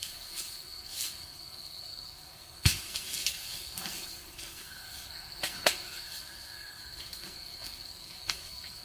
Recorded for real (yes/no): no